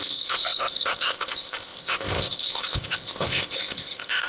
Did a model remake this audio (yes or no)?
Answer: yes